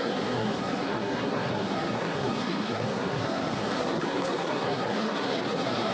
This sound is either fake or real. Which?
fake